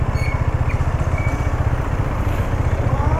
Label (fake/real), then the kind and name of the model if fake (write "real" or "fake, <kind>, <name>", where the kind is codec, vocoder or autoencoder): real